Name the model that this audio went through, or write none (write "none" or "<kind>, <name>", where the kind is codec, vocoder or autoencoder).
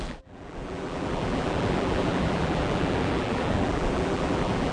vocoder, BigVGAN v2